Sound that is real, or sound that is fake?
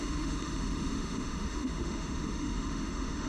fake